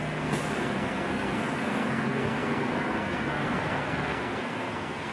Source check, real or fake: fake